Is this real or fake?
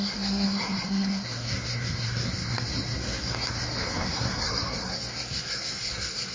fake